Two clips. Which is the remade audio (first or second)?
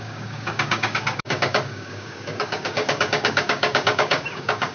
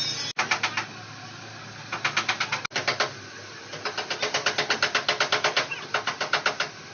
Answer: first